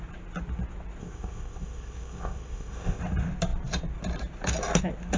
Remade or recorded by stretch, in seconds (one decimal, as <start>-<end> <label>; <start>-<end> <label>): 0.0-1.0 recorded; 1.0-3.0 remade; 3.0-5.2 recorded